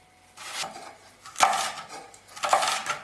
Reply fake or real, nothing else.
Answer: real